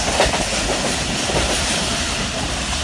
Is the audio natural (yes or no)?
yes